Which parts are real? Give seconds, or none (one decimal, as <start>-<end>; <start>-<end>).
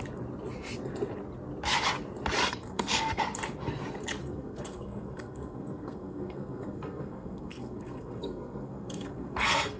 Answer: 0.0-2.4; 3.2-4.2